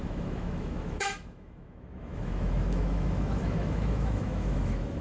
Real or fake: fake